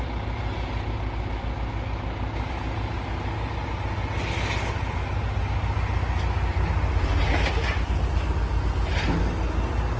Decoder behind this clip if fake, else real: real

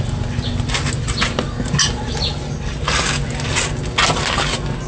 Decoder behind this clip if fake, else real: real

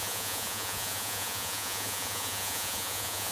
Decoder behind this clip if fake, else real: fake, vocoder, Vocos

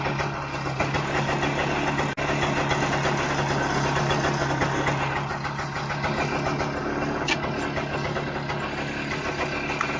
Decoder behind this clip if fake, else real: real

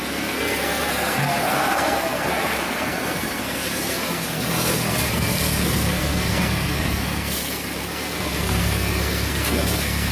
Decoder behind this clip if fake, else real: fake, codec, SNAC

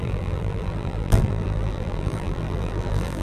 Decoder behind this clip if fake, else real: fake, vocoder, BigVGAN v2